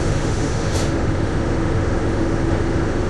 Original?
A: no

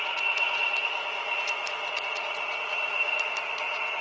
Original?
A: no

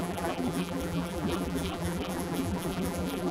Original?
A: no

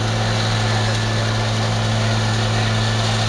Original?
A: yes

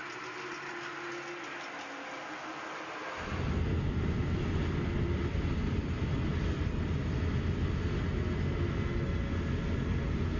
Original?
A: yes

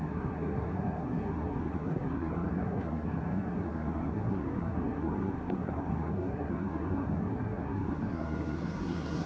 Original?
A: no